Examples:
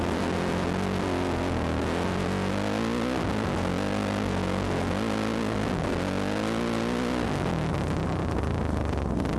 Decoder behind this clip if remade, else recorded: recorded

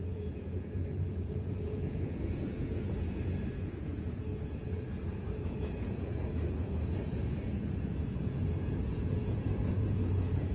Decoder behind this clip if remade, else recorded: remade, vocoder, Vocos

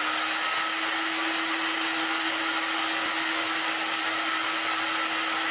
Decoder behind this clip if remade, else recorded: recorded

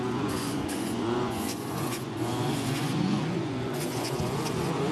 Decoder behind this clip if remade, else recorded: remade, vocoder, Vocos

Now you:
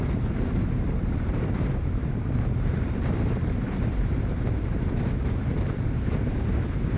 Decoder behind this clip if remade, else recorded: remade, vocoder, BigVGAN v2